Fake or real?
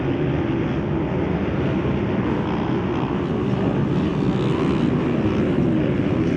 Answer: real